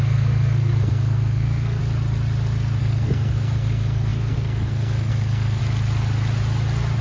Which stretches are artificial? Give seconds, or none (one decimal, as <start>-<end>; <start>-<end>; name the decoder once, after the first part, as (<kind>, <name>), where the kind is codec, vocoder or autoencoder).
0.0-1.8 (codec, SNAC); 2.8-5.6